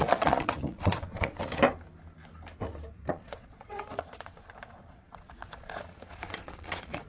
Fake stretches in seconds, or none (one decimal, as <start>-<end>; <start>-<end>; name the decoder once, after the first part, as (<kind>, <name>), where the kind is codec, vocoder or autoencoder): 0.0-1.5 (vocoder, Vocos); 3.1-7.1